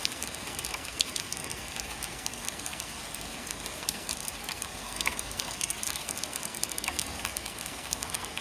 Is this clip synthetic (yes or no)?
yes